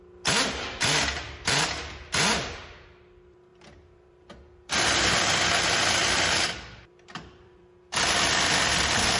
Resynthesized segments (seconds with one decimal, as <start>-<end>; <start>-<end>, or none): 3.5-8.0

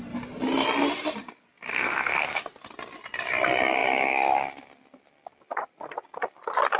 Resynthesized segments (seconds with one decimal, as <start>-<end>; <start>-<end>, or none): 1.7-2.4

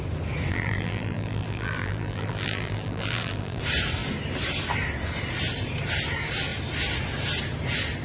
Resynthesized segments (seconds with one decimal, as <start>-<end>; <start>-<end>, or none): 0.5-3.6

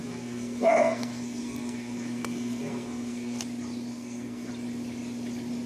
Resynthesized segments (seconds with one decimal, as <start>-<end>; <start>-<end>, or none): 0.0-3.4; 3.9-4.5

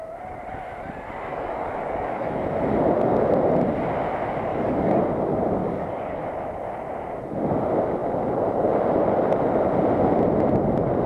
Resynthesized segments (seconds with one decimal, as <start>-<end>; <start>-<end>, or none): 1.3-2.4; 4.5-5.0; 5.6-6.2